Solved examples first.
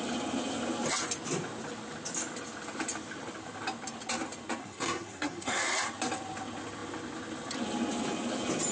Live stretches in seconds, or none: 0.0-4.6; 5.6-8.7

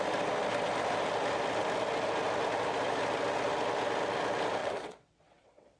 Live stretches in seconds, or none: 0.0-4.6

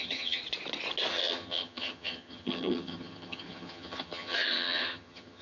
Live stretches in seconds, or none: 0.4-1.1

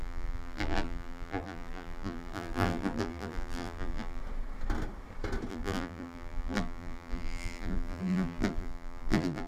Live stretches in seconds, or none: 4.2-5.5

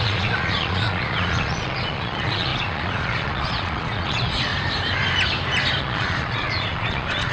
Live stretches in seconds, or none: 4.5-5.8